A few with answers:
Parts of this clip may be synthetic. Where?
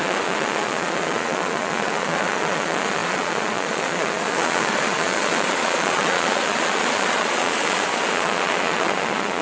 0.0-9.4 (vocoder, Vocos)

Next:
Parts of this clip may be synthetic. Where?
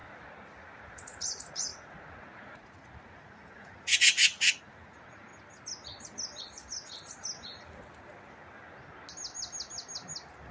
1.0-5.3 (vocoder, Vocos)